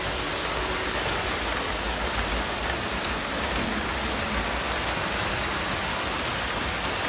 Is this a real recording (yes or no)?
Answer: yes